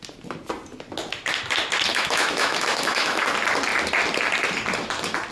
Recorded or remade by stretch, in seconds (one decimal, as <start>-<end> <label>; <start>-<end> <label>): 0.0-1.9 recorded; 1.9-3.3 remade; 3.3-5.3 recorded